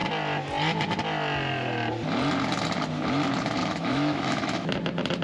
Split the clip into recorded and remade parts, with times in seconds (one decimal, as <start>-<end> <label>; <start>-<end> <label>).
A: 0.0-3.6 recorded; 3.6-4.7 remade; 4.7-5.2 recorded

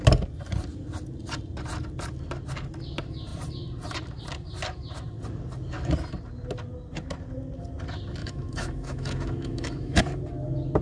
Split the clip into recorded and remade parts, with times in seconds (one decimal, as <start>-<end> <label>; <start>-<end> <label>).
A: 0.0-8.2 recorded; 8.2-10.0 remade; 10.0-10.8 recorded